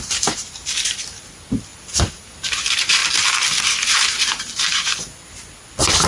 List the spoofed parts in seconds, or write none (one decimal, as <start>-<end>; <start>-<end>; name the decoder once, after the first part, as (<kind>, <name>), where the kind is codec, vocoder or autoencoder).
0.0-3.0 (vocoder, BigVGAN v2); 3.6-4.9